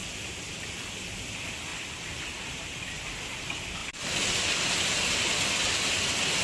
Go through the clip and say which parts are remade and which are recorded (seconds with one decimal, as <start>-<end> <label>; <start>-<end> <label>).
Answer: 0.0-6.4 recorded